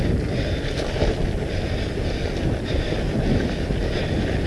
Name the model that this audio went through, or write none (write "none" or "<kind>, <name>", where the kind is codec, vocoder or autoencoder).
none